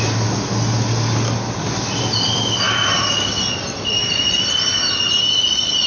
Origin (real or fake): real